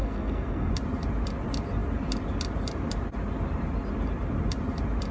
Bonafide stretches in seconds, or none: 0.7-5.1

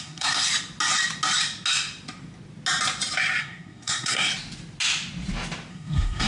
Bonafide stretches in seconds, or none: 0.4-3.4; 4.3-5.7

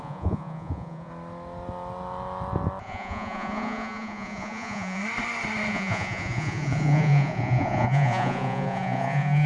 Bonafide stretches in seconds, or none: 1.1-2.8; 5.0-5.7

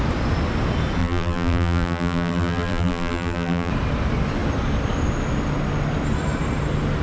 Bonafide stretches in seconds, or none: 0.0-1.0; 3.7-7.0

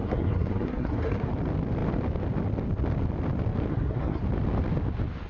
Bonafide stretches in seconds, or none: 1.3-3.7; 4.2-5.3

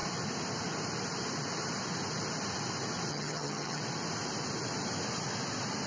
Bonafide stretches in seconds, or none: 0.0-3.1; 3.8-5.9

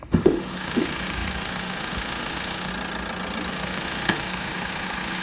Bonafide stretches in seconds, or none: 2.7-3.5

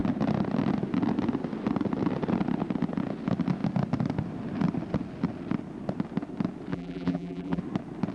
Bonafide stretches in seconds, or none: 0.0-6.7; 7.6-8.1